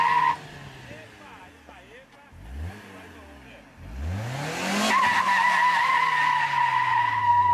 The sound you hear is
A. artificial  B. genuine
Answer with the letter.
B